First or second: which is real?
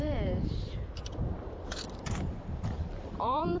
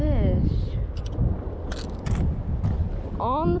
second